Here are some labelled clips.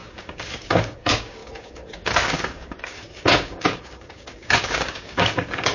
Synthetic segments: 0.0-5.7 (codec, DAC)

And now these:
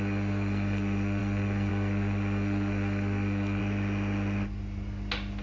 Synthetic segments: 0.0-3.6 (codec, SNAC)

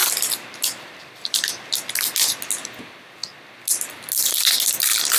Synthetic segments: none